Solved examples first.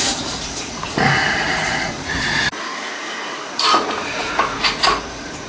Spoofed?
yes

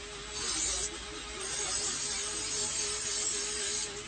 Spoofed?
no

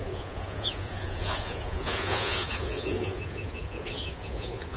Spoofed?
yes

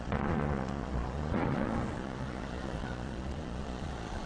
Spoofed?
yes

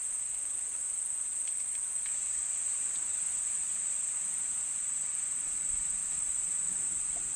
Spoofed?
no